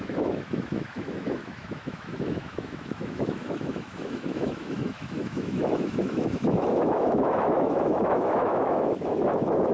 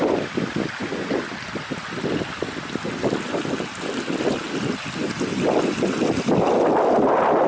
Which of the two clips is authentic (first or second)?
second